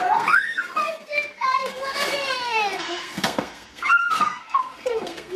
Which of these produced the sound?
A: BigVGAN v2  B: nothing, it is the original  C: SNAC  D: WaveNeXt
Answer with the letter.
C